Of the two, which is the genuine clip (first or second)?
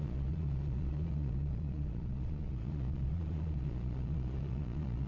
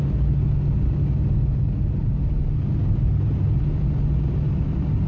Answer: second